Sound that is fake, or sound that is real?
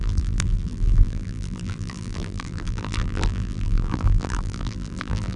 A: fake